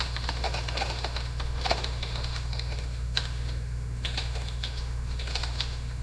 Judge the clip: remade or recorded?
remade